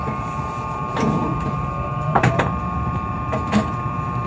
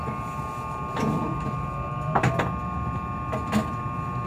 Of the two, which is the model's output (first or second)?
first